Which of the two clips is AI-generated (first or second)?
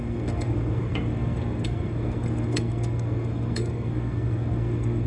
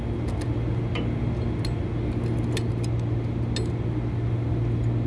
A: first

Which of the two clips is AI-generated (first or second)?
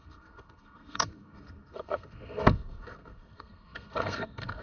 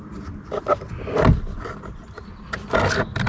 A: first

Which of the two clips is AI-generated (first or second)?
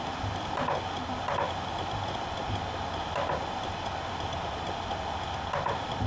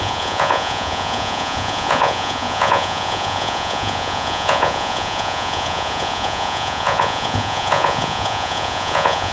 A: second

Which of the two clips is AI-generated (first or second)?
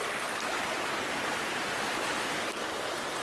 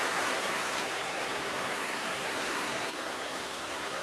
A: second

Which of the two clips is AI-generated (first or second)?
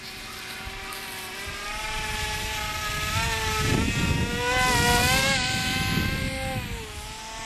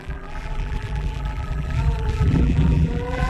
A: second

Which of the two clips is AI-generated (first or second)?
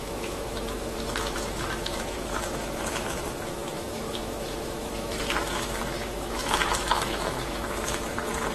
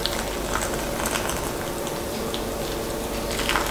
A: first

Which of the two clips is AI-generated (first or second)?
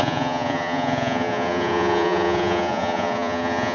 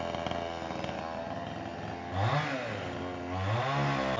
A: first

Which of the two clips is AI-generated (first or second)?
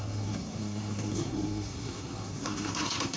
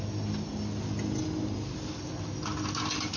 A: first